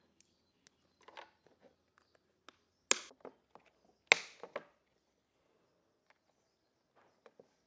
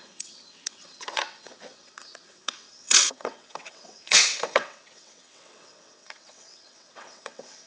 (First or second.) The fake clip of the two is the second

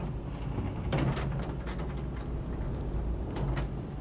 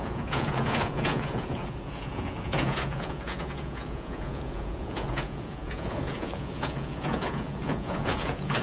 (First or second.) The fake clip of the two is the second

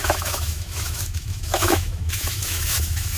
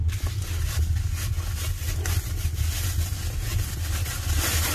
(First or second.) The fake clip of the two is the first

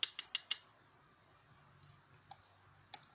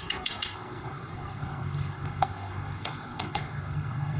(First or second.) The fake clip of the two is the second